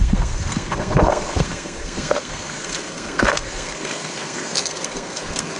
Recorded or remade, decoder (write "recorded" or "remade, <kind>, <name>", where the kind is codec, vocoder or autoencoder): remade, codec, SNAC